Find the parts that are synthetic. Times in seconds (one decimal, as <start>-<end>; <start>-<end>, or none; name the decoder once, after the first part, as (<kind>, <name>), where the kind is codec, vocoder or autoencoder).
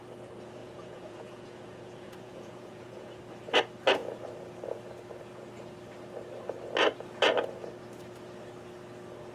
0.6-3.2 (vocoder, Vocos)